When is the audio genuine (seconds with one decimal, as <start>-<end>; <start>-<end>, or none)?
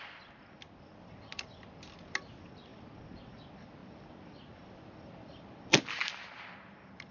0.0-7.1